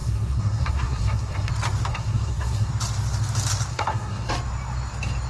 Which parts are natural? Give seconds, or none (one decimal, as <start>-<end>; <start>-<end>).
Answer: 1.5-1.9; 2.7-3.7; 4.3-5.3